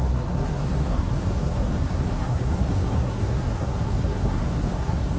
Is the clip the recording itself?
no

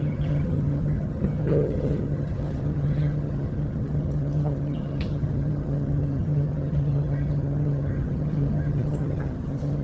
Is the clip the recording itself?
no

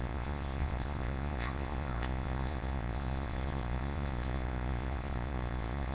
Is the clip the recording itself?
no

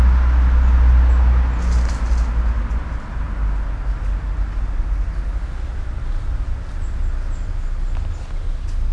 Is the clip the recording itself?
yes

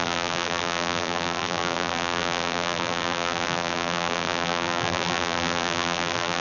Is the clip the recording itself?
no